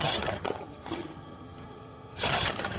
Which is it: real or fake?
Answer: fake